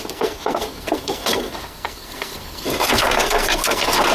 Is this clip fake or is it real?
fake